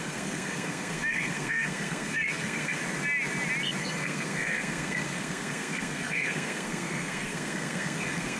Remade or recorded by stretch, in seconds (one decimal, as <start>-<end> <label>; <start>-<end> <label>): 0.0-2.8 remade; 2.8-3.8 recorded; 3.8-8.4 remade